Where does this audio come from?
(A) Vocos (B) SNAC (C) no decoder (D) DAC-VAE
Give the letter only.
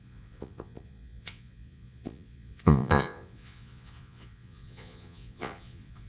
A